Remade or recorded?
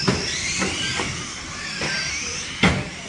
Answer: recorded